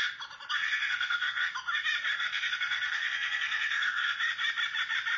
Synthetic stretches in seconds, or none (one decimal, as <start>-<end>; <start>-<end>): 0.6-1.5; 2.1-4.2